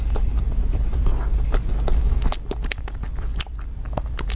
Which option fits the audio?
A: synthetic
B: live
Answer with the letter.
B